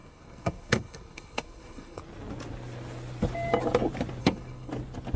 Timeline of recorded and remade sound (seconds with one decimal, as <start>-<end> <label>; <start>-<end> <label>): 0.0-2.0 remade; 2.0-4.2 recorded; 4.2-4.7 remade; 4.7-5.2 recorded